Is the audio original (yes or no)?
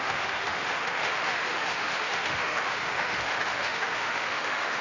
no